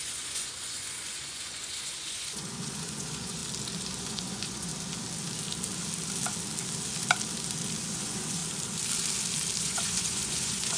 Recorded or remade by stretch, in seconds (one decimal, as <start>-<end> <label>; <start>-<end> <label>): 0.0-3.4 remade; 3.4-4.0 recorded; 4.0-4.7 remade; 4.7-7.8 recorded; 7.8-8.4 remade; 8.4-9.6 recorded; 9.6-10.8 remade